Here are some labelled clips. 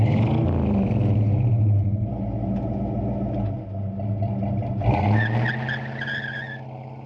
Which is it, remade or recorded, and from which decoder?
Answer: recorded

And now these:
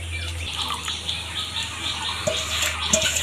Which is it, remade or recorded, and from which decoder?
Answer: recorded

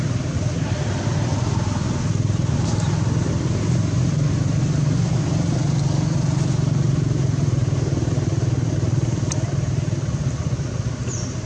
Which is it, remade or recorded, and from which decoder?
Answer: recorded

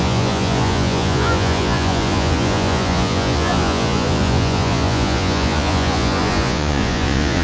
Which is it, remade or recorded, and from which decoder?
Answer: remade, vocoder, Vocos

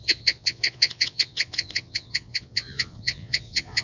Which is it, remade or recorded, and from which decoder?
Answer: remade, vocoder, Vocos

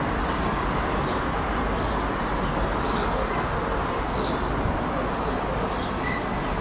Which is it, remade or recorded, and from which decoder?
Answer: recorded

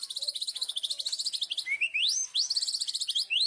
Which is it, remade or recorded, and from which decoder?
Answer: recorded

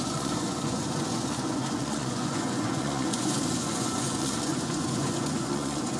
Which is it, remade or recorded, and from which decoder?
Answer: remade, vocoder, Vocos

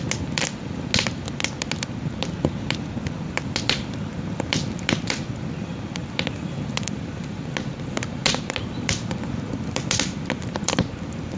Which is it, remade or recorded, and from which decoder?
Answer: recorded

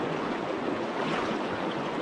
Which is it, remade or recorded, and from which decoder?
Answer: remade, vocoder, Vocos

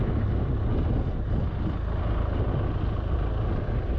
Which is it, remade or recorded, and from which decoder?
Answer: recorded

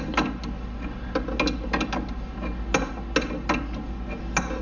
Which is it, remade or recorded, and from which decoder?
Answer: recorded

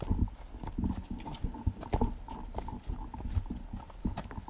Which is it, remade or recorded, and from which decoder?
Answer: recorded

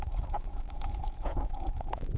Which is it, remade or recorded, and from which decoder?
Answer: remade, vocoder, Vocos